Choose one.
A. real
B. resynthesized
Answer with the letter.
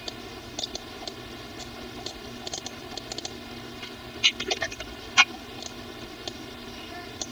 A